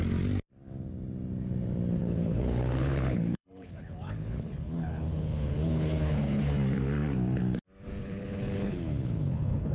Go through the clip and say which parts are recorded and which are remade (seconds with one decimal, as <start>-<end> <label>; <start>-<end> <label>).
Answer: 0.0-2.0 recorded; 2.0-6.4 remade; 6.4-8.0 recorded; 8.0-9.7 remade